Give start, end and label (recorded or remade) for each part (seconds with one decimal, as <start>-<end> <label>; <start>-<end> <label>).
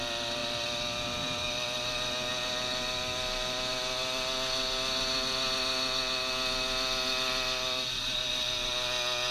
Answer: 0.0-9.3 recorded